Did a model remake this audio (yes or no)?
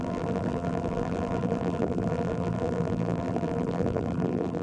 yes